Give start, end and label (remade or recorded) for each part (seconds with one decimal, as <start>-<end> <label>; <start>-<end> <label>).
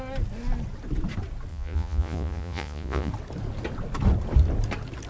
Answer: 0.0-1.5 recorded; 1.5-3.1 remade; 3.1-5.1 recorded